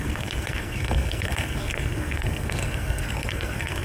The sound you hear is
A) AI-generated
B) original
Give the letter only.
A